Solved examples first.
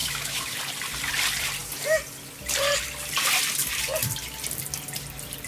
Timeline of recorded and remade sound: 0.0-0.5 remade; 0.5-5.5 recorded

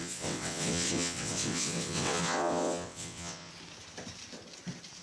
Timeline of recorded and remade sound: 0.0-3.5 remade; 3.5-5.0 recorded

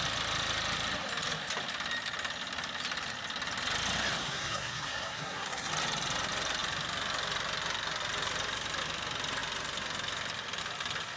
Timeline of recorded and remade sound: 0.0-4.2 recorded; 4.2-5.7 remade; 5.7-11.2 recorded

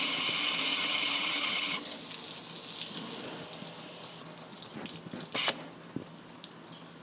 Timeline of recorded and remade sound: 0.0-0.7 recorded; 0.7-2.0 remade; 2.0-7.0 recorded

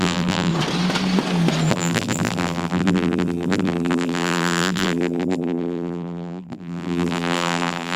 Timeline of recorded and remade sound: 0.0-0.5 remade; 0.5-1.7 recorded; 1.7-8.0 remade

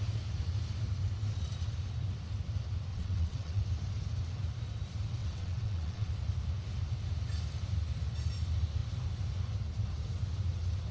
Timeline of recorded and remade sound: 0.0-2.9 recorded; 2.9-3.6 remade; 3.6-5.2 recorded; 5.2-6.1 remade; 6.1-10.9 recorded

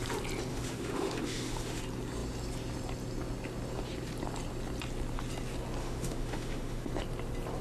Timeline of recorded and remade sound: 0.0-0.5 recorded; 0.5-1.8 remade; 1.8-5.8 recorded; 5.8-6.9 remade; 6.9-7.6 recorded

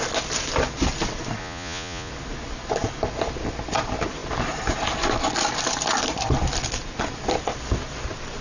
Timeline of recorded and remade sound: 0.0-1.4 recorded; 1.4-2.1 remade; 2.1-8.4 recorded